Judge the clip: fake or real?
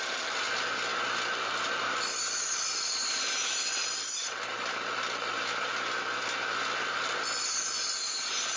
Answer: real